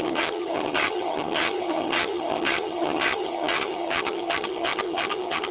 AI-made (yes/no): yes